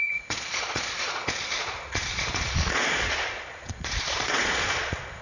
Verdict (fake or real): fake